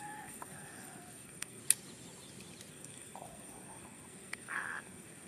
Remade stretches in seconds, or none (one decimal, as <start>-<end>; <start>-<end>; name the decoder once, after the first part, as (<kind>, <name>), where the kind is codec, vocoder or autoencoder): 0.0-1.6 (codec, SNAC); 2.7-5.3